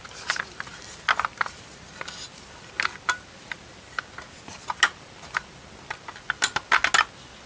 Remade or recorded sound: recorded